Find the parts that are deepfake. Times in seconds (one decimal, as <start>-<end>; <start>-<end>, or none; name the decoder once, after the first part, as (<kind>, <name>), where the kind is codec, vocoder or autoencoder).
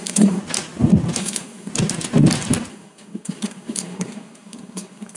0.0-0.4 (codec, SNAC); 1.2-1.7; 2.7-5.2